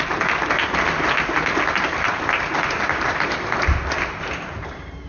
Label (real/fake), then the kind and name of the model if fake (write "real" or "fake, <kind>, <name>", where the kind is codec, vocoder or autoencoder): real